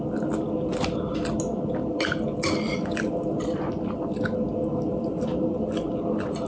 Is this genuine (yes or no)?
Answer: yes